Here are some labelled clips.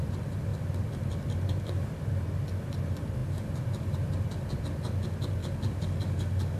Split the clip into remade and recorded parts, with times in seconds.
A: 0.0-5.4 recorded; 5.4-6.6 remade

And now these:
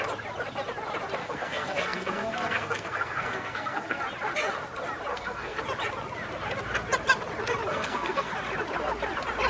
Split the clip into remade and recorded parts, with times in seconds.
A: 0.0-1.2 recorded; 1.2-4.0 remade; 4.0-5.1 recorded; 5.1-5.6 remade; 5.6-7.7 recorded; 7.7-8.3 remade; 8.3-9.5 recorded

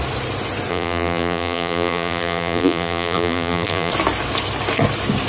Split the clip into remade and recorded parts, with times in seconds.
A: 0.0-0.7 recorded; 0.7-3.9 remade; 3.9-5.3 recorded